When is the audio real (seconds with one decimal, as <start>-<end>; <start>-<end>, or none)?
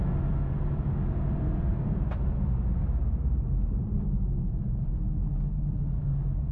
0.0-1.7; 4.3-6.5